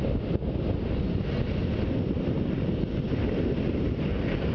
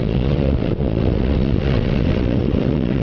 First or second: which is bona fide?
first